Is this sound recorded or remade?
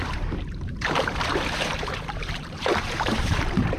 remade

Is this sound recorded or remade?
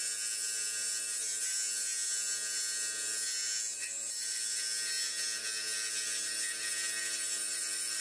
recorded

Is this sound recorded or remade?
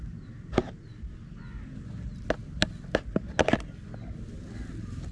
recorded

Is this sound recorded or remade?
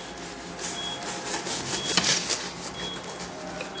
recorded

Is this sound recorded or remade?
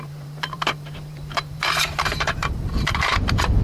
remade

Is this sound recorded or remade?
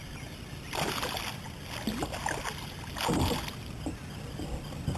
recorded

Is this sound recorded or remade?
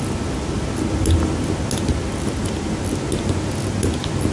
recorded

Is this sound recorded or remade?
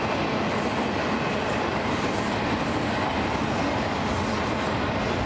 recorded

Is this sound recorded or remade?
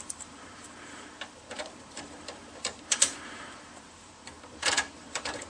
remade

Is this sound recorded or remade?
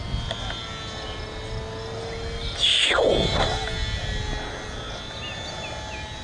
recorded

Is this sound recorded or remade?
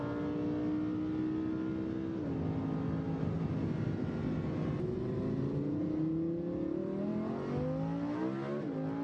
recorded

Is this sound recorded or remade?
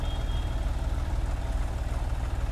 recorded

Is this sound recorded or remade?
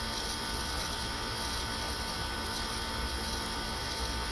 recorded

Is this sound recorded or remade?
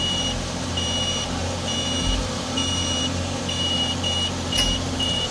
remade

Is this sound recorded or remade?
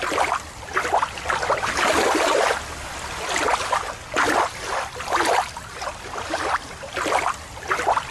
remade